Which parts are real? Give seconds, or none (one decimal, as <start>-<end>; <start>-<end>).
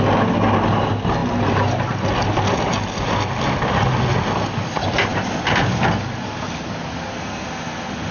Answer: 0.0-8.1